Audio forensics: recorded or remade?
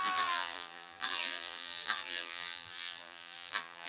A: remade